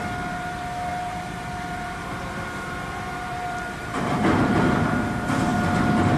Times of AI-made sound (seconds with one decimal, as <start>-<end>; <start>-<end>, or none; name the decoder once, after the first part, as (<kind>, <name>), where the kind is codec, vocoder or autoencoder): 0.9-4.5 (vocoder, BigVGAN v2)